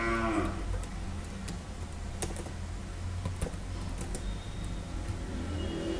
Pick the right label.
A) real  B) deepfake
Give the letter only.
A